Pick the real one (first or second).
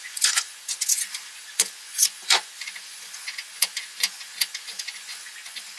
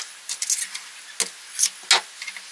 second